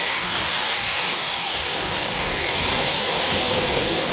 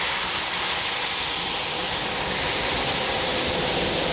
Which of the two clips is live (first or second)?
second